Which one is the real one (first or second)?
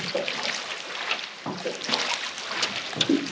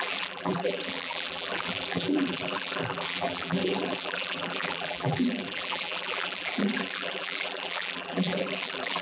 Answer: first